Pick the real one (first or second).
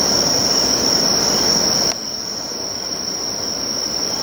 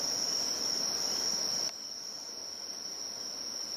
second